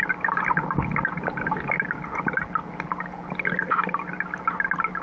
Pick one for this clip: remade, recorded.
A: recorded